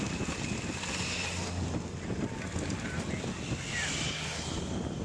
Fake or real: real